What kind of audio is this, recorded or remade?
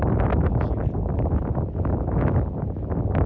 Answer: recorded